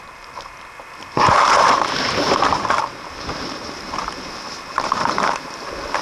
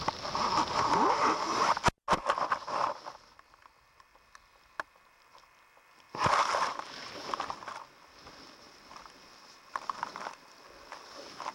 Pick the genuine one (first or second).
second